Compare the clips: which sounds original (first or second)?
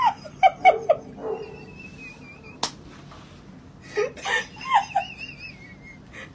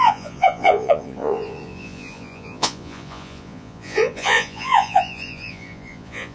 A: first